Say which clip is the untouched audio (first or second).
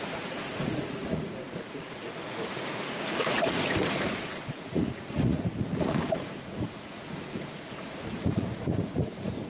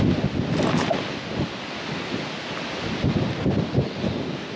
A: second